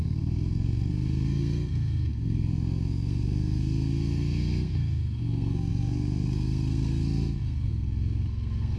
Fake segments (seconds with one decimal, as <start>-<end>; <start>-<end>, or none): 0.0-8.8

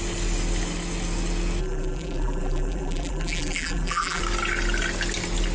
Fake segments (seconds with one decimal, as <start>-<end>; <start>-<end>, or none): 1.6-4.2